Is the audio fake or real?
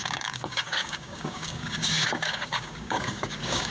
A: fake